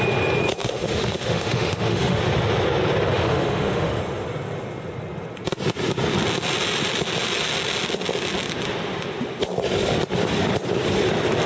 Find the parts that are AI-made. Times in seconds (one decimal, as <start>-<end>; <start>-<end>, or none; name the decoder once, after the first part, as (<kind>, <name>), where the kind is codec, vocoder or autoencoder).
0.6-2.2 (autoencoder, DAC-VAE); 3.1-4.0